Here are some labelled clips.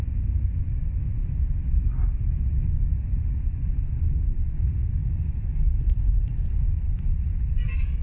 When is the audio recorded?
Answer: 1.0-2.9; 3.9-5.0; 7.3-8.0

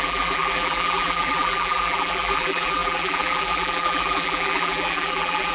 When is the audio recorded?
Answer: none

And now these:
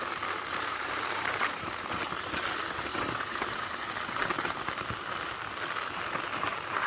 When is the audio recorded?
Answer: 0.0-0.5; 1.9-2.9; 3.7-6.9

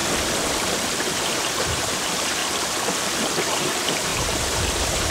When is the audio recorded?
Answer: 0.0-1.1; 2.4-3.5

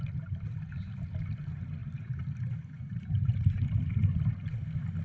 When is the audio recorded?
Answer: 0.0-5.0

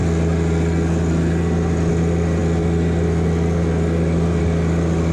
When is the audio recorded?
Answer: 0.0-5.1

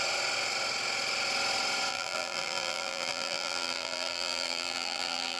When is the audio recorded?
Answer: 0.0-1.9

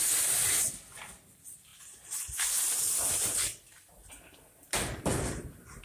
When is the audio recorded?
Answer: 0.0-5.8